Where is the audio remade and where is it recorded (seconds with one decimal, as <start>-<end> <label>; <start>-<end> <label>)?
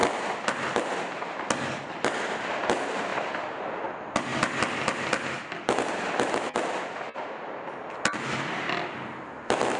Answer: 0.0-9.8 recorded